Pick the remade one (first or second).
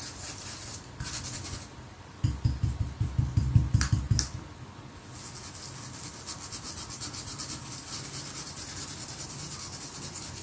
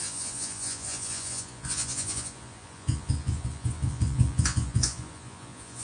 second